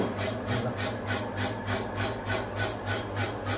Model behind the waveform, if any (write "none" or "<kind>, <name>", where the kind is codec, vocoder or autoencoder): none